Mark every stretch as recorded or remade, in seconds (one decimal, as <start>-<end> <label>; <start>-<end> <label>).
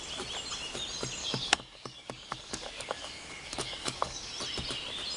0.0-1.2 recorded; 1.2-4.3 remade; 4.3-5.2 recorded